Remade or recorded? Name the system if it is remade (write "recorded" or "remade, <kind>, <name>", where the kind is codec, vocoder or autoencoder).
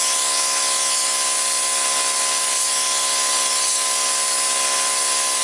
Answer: recorded